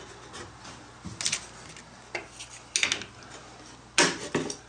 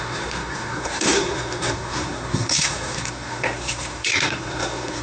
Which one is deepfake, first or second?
second